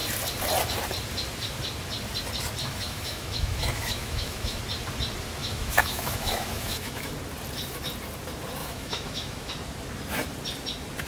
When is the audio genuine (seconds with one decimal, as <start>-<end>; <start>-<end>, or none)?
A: 0.0-2.6; 4.6-5.4; 7.1-8.6; 9.5-11.1

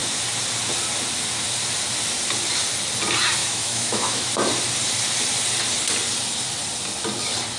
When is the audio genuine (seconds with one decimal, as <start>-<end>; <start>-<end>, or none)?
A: 0.0-3.4; 4.3-7.6

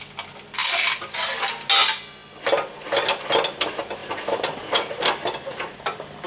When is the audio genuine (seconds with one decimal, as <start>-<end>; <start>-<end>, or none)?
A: 0.0-6.3

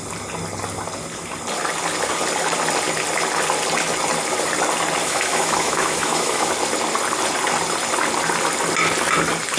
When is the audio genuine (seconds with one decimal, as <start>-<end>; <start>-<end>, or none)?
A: 0.0-5.0; 6.5-9.6

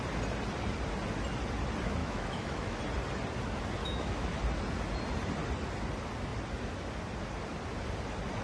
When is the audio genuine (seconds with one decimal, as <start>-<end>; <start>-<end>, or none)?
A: 0.0-2.0; 2.8-3.8; 4.4-8.4